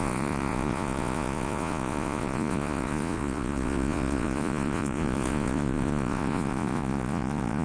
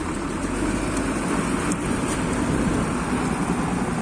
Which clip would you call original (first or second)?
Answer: second